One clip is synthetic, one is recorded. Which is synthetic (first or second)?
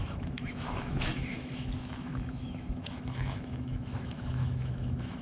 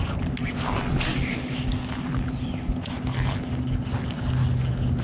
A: first